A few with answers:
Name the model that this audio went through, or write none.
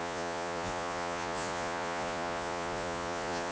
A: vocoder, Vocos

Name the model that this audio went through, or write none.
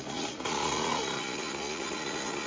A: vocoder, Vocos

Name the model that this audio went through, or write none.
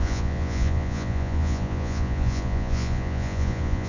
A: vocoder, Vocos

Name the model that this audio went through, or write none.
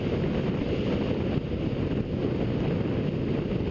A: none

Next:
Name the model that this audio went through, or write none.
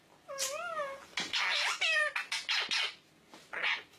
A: none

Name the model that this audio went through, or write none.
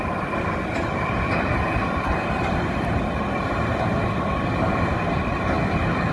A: none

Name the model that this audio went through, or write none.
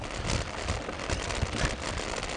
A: none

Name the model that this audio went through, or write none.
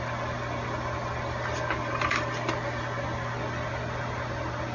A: none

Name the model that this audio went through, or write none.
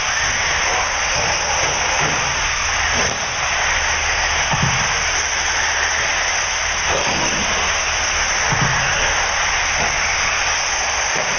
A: none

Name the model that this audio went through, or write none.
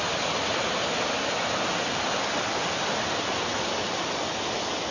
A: none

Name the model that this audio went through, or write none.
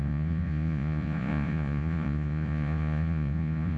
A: vocoder, Vocos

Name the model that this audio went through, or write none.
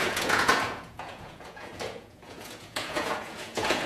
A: vocoder, Vocos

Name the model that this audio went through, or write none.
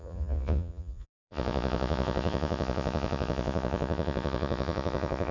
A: vocoder, Vocos